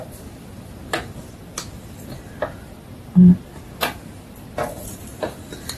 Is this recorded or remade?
remade